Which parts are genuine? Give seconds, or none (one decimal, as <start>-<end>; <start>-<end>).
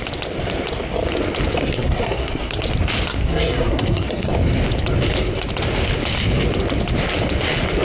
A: 0.0-1.6; 2.6-3.1; 4.3-7.8